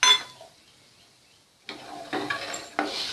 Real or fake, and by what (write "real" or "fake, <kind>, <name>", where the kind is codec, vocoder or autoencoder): real